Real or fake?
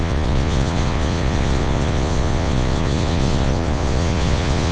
fake